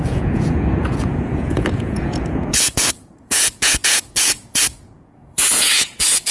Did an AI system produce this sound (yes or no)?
yes